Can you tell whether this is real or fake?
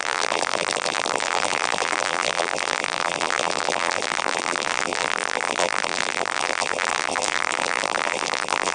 fake